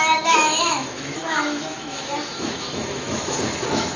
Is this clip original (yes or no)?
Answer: no